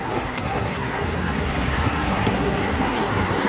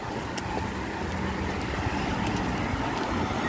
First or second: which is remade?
first